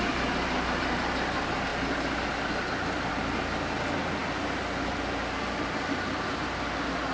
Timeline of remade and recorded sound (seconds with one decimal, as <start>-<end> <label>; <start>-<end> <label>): 0.0-7.1 recorded